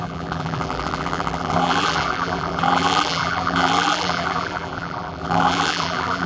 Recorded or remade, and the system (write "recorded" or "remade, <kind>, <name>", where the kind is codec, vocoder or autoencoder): remade, vocoder, BigVGAN v2